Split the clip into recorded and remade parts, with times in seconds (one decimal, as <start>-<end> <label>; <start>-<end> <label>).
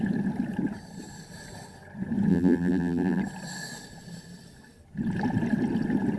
0.0-2.3 recorded; 2.3-3.2 remade; 3.2-6.2 recorded